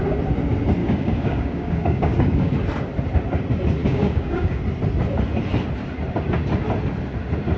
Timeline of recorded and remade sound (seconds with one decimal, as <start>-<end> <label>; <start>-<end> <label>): 0.0-0.8 recorded; 0.8-2.5 remade; 2.5-3.8 recorded; 3.8-4.6 remade; 4.6-7.6 recorded